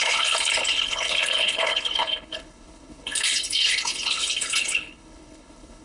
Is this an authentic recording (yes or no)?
no